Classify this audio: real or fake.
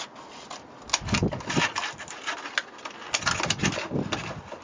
real